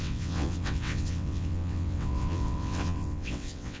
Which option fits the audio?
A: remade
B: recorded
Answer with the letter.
A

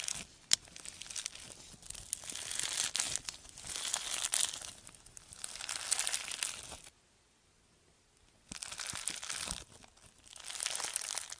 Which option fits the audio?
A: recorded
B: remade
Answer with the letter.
A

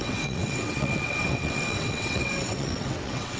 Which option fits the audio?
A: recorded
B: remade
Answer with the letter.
B